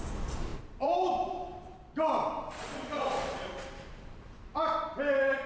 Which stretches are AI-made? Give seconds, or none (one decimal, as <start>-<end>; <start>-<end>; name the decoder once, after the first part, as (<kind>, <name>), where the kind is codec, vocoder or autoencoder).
0.0-5.5 (vocoder, BigVGAN v2)